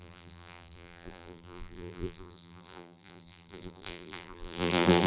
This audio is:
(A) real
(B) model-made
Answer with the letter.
B